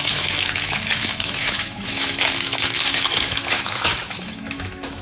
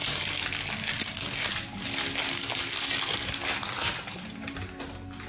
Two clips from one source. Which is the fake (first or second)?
first